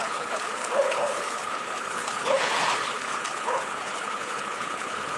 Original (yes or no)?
no